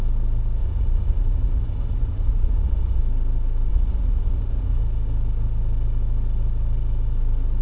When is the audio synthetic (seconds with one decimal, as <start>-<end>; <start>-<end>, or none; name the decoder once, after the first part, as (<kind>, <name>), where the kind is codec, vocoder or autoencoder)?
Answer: 0.6-3.0 (vocoder, Vocos); 3.7-4.8